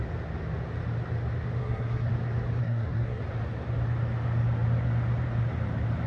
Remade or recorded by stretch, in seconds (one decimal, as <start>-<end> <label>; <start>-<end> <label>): 0.0-1.6 recorded; 1.6-2.1 remade; 2.1-2.6 recorded; 2.6-3.2 remade; 3.2-6.1 recorded